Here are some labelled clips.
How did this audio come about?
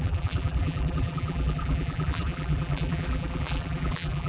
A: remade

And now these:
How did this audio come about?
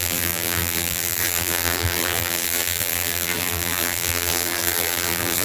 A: remade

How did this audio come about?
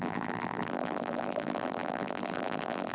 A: remade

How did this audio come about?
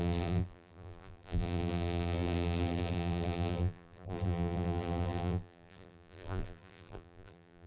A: remade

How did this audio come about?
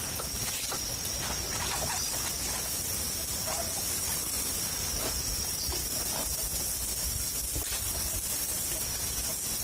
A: recorded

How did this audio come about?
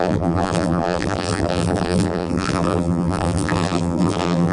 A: remade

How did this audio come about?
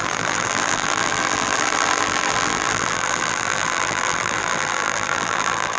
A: remade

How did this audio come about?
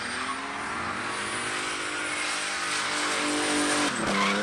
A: recorded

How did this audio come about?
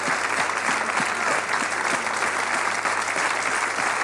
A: recorded